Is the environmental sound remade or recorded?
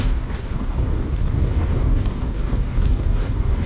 remade